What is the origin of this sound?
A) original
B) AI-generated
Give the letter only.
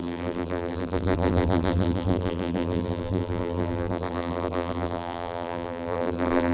B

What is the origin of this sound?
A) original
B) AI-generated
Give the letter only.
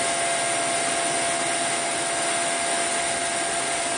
A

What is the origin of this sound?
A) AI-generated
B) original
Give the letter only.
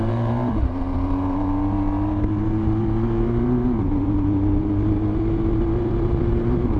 A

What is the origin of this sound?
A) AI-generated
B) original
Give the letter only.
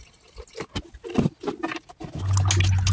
B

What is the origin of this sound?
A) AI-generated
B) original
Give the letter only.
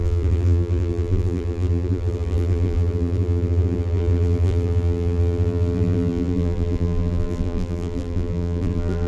A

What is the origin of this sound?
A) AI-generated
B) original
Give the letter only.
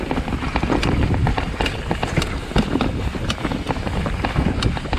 B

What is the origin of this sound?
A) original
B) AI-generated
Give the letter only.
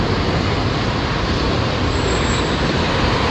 B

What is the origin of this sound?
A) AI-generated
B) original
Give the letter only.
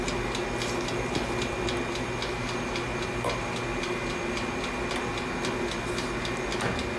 B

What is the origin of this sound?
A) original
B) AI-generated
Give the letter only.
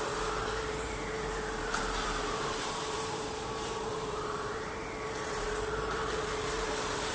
B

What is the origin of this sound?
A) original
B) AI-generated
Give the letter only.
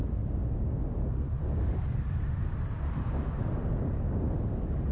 B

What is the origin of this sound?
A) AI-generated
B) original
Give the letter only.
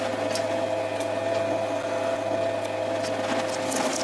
B